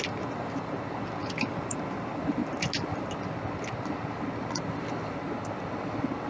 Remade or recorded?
recorded